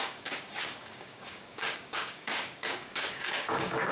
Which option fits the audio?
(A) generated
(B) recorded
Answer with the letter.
A